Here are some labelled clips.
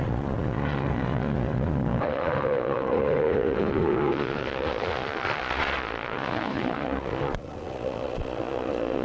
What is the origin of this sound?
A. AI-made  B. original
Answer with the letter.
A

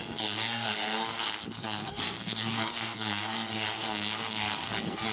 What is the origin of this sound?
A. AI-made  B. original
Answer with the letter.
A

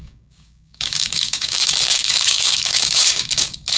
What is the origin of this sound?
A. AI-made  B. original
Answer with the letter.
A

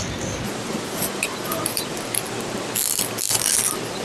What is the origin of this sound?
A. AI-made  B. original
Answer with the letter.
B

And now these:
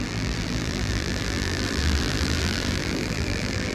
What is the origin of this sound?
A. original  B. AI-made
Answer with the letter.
B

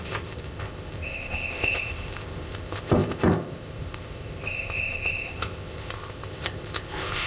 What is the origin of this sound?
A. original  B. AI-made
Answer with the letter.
B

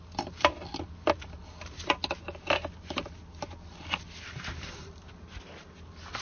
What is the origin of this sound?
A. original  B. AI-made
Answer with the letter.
A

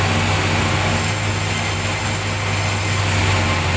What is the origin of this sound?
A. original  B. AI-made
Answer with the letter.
A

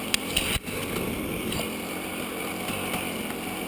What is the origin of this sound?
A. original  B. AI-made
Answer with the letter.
A